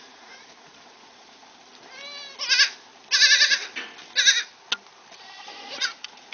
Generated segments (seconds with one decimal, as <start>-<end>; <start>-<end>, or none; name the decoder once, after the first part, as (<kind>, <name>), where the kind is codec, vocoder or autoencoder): 0.0-1.4 (vocoder, Vocos); 5.2-6.3